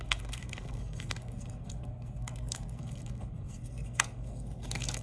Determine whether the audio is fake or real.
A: fake